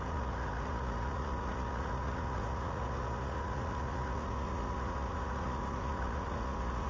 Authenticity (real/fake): fake